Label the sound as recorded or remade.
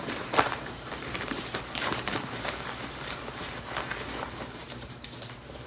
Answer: remade